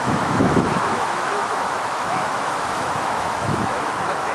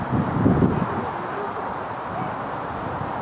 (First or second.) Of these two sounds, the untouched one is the second